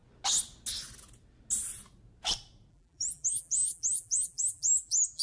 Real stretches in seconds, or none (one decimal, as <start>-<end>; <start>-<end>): 0.0-2.7